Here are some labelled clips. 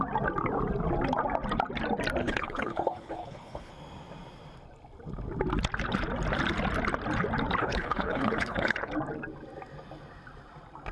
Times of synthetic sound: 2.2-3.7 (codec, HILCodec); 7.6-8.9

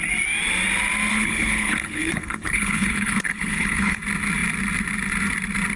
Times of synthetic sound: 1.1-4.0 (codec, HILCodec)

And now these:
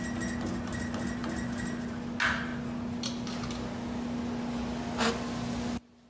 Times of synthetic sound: none

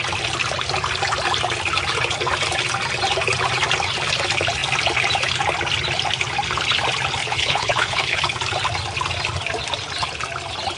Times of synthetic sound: 7.2-8.2 (codec, HILCodec)